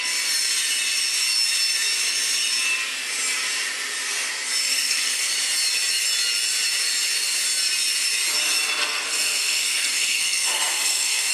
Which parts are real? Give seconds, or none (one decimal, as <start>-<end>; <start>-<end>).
0.0-4.7; 5.2-8.8